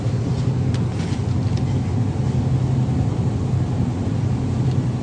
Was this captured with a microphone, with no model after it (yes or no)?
yes